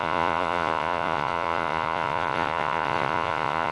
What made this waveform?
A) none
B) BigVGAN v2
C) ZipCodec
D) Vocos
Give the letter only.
D